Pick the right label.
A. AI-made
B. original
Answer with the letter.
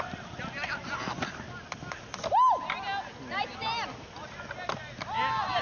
B